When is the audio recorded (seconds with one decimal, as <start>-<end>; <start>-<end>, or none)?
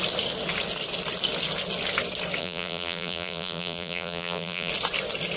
0.0-2.4; 4.7-5.4